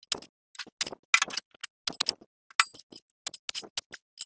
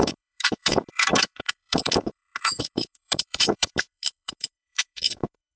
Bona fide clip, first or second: first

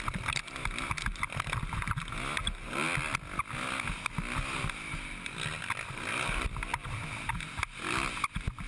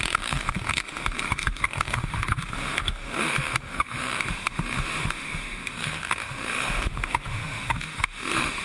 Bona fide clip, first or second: first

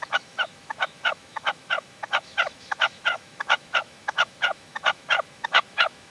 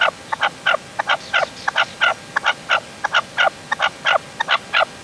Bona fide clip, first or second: second